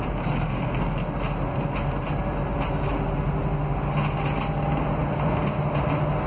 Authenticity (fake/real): real